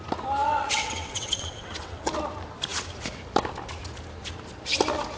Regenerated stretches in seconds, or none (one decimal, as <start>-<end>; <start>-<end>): 0.4-2.2